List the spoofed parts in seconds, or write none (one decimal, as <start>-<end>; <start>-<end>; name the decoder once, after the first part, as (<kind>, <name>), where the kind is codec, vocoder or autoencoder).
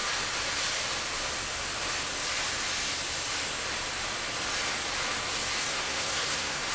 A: 5.6-6.7 (codec, SNAC)